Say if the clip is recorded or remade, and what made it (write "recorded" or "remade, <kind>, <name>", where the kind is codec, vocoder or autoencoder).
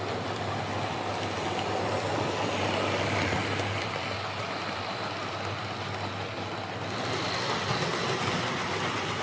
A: recorded